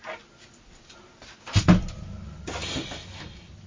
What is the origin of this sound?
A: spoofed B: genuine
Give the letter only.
A